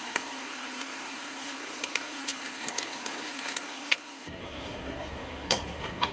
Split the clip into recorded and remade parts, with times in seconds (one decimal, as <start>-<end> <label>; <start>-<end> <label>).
0.0-6.1 remade